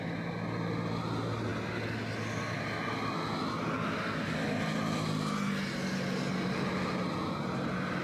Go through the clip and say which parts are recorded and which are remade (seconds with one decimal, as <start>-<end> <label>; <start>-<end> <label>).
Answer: 0.0-8.0 recorded

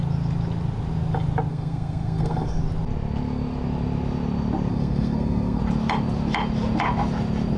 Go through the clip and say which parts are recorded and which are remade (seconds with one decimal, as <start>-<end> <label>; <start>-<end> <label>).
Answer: 0.0-1.5 recorded; 1.5-2.6 remade; 2.6-4.7 recorded; 4.7-5.6 remade; 5.6-7.6 recorded